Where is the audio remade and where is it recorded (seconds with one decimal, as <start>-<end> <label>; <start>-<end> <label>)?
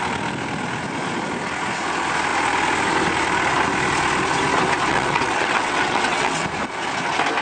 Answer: 0.0-4.9 recorded; 4.9-6.4 remade; 6.4-7.4 recorded